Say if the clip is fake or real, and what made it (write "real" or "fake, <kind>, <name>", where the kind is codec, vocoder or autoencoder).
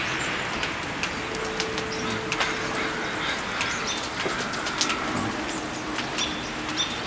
real